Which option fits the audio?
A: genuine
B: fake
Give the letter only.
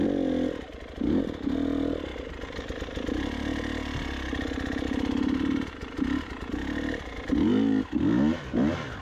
A